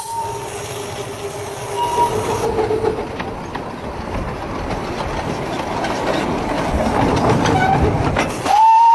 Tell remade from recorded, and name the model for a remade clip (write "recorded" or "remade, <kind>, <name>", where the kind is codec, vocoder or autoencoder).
recorded